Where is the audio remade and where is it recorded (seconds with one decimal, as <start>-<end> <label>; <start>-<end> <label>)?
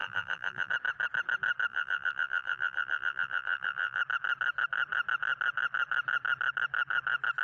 0.0-0.7 remade; 0.7-1.7 recorded; 1.7-4.0 remade; 4.0-7.4 recorded